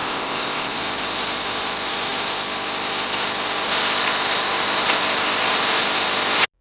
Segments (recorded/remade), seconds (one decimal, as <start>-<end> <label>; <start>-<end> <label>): 0.0-0.8 remade; 0.8-6.6 recorded